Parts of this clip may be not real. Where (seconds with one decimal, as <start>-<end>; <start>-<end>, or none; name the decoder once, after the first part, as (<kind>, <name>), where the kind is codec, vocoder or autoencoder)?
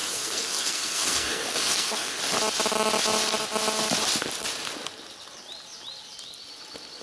0.0-2.2 (codec, SNAC)